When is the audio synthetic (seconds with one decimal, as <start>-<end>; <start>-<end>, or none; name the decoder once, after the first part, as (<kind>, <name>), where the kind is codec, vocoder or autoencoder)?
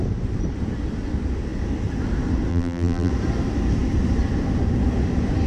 2.5-3.1 (vocoder, BigVGAN v2)